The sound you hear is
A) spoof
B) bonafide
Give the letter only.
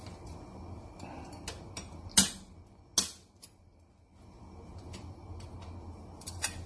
B